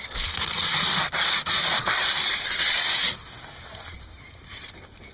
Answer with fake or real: real